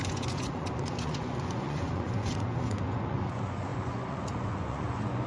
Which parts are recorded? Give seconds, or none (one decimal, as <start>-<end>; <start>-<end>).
none